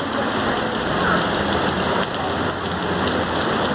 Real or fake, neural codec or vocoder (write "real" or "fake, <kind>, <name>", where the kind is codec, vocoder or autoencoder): real